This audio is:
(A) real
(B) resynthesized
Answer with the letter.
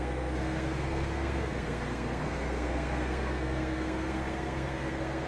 B